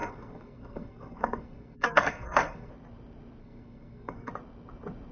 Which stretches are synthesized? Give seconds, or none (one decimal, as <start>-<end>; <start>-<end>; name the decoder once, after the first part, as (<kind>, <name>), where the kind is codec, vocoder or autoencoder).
0.0-2.7 (codec, SNAC); 3.4-4.3